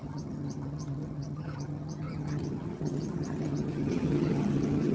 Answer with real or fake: fake